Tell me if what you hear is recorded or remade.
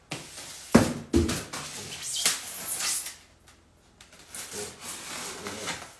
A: recorded